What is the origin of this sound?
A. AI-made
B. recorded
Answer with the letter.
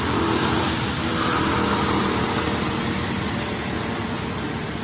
B